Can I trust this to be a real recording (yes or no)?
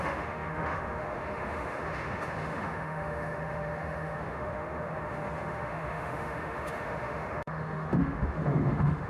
no